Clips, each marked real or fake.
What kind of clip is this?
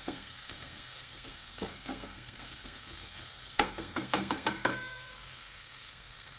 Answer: fake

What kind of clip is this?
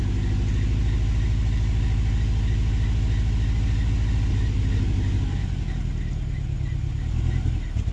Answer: real